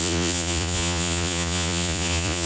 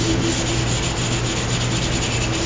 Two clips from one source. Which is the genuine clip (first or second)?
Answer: second